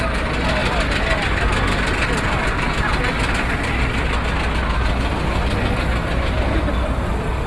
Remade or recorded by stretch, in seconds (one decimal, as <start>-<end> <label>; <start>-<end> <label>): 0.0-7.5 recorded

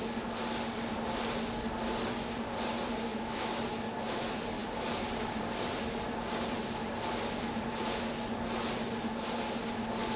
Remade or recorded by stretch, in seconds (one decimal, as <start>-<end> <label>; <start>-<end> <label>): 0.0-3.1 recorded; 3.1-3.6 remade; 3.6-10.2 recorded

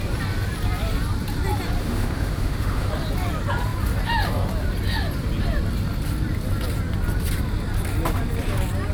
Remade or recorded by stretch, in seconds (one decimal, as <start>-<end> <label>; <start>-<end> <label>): 0.0-1.8 recorded; 1.8-2.9 remade; 2.9-8.9 recorded

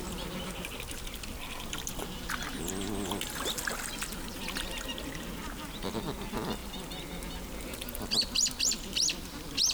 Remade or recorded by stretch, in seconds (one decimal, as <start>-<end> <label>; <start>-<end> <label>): 0.0-9.7 recorded